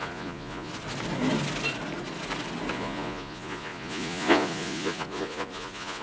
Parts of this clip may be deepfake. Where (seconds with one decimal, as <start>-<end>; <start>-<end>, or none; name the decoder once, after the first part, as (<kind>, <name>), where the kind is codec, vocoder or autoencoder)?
0.0-0.7 (vocoder, Vocos); 2.7-6.0